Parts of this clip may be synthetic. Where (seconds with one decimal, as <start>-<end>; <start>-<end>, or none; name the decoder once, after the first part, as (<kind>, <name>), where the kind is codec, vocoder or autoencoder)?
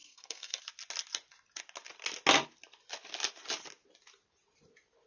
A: 0.0-0.6 (codec, SNAC)